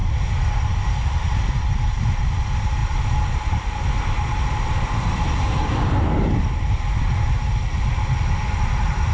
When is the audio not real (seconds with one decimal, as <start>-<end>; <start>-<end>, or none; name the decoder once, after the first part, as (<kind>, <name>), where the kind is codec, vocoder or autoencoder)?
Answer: none